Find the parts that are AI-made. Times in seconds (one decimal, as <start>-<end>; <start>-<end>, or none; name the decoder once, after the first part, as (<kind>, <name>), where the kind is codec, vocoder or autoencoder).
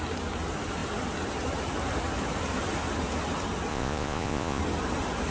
3.7-4.6 (vocoder, Vocos)